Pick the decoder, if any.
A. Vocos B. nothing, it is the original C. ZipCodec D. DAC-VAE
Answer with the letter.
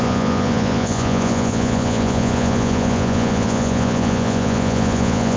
A